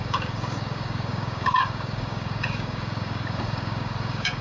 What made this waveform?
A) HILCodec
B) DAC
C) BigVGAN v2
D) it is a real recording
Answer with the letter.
B